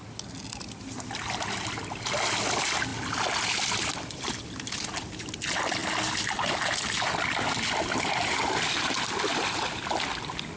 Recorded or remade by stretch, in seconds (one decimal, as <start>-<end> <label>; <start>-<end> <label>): 0.0-10.6 recorded